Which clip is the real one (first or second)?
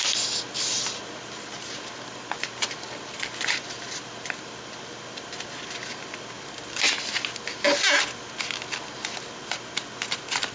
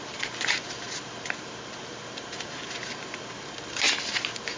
first